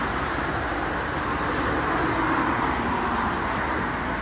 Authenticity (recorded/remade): recorded